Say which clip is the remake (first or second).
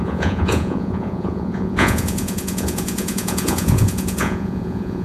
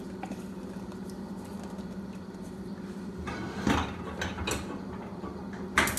first